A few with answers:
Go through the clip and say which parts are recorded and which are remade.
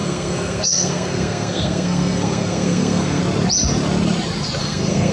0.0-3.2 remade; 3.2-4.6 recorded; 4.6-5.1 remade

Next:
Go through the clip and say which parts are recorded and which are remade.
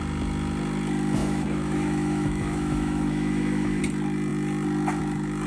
0.0-1.2 recorded; 1.2-3.8 remade; 3.8-5.5 recorded